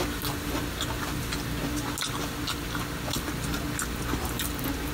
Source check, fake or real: real